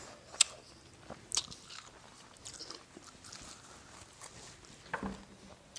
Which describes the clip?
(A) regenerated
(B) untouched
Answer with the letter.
B